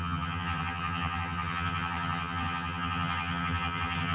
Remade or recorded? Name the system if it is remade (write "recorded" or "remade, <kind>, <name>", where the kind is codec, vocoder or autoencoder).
remade, vocoder, HiFi-GAN